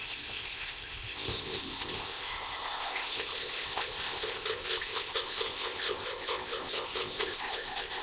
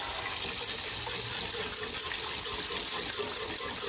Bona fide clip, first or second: second